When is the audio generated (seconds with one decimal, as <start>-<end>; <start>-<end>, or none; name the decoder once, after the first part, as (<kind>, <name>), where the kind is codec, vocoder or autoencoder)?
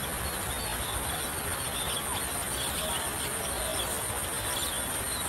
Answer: none